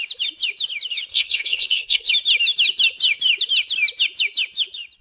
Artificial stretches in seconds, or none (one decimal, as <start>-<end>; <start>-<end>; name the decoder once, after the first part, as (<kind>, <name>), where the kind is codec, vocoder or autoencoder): 1.1-2.1 (codec, SNAC)